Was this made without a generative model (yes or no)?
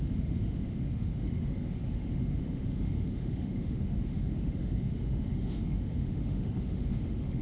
no